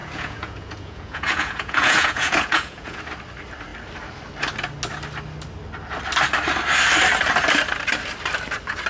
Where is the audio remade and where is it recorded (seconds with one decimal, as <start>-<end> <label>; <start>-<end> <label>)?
0.0-3.0 remade; 3.0-8.9 recorded